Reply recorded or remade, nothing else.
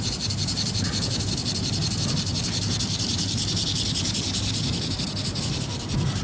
recorded